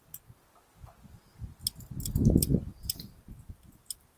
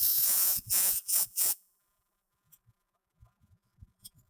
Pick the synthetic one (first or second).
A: second